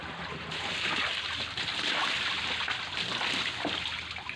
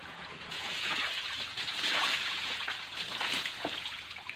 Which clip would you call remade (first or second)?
second